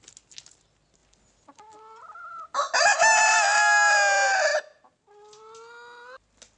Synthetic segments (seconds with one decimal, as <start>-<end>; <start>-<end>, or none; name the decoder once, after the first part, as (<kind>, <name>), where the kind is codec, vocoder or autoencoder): none